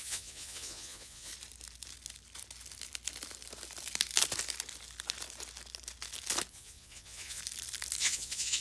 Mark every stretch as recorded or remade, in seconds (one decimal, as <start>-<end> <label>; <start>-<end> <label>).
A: 0.0-1.3 remade; 1.3-6.5 recorded; 6.5-7.4 remade; 7.4-8.0 recorded; 8.0-8.6 remade